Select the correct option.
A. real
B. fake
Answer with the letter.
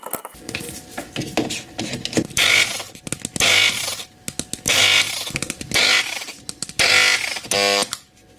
A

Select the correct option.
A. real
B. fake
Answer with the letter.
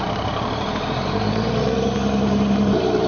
B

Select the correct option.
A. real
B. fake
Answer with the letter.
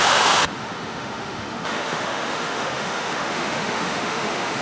B